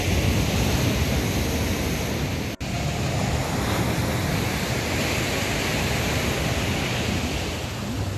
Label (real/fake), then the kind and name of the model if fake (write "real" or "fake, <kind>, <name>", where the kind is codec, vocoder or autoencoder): real